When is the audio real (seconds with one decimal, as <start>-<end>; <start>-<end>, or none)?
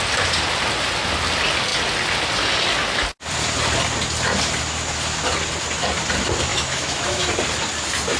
0.0-6.5; 7.3-8.2